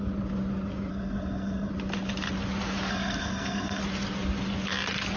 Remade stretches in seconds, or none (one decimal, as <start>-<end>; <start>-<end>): 0.9-1.7; 2.9-3.8